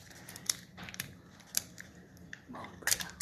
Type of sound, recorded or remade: recorded